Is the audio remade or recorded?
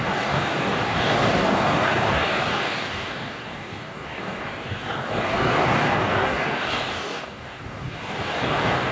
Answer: remade